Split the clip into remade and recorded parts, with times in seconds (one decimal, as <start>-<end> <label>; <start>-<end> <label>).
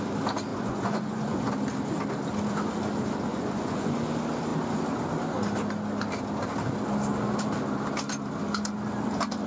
0.0-0.5 recorded; 0.5-1.5 remade; 1.5-3.3 recorded; 3.3-4.0 remade; 4.0-9.5 recorded